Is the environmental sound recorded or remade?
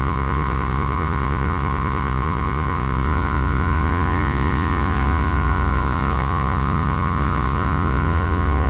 remade